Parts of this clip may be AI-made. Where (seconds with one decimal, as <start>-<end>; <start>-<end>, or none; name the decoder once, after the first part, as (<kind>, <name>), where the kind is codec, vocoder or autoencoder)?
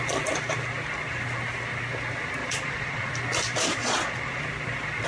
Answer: 2.4-3.1 (vocoder, Vocos); 3.8-4.4